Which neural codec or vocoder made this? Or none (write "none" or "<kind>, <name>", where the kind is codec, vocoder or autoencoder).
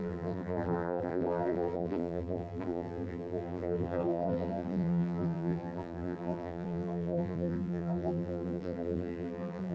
vocoder, BigVGAN v2